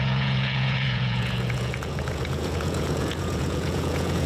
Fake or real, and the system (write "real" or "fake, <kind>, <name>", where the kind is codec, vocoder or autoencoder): fake, vocoder, Vocos